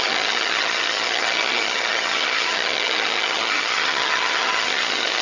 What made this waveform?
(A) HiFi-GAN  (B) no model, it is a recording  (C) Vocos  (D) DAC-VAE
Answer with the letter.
A